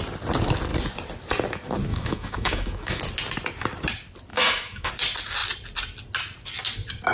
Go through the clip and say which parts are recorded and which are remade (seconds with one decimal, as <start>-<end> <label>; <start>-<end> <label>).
0.0-1.9 recorded; 1.9-3.0 remade; 3.0-4.3 recorded; 4.3-4.9 remade; 4.9-7.1 recorded